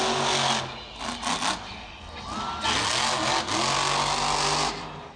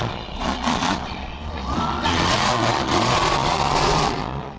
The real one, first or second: first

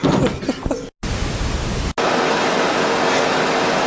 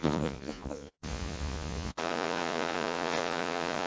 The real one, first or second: first